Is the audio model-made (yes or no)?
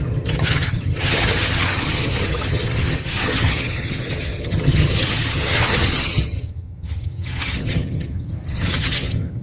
yes